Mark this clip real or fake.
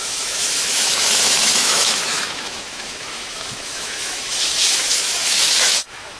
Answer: fake